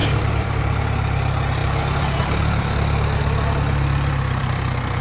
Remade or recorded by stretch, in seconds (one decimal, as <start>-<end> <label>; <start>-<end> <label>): 0.0-0.6 remade; 0.6-1.6 recorded; 1.6-4.6 remade; 4.6-5.0 recorded